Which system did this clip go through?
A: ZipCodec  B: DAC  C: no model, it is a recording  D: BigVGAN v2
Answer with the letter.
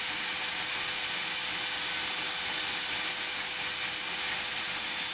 C